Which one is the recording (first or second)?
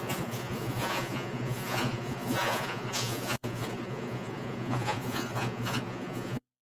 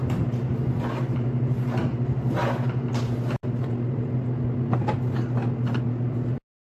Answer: second